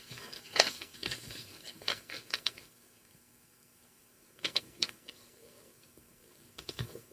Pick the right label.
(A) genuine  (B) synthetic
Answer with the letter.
B